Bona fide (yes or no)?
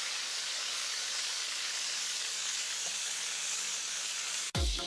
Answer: no